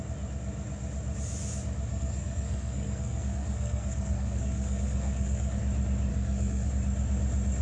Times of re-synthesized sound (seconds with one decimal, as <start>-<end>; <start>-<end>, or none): 1.9-5.6; 6.1-6.7